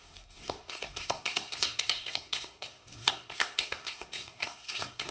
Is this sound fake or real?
fake